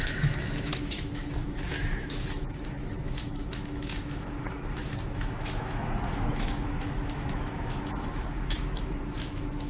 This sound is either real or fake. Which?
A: fake